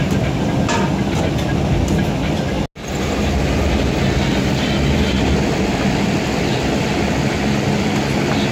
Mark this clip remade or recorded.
recorded